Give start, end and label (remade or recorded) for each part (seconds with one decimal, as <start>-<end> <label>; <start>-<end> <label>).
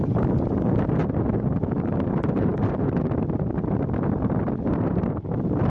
0.0-1.0 recorded; 1.0-3.2 remade; 3.2-5.7 recorded